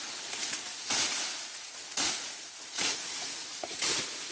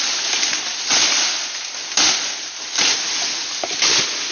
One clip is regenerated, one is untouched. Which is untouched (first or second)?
second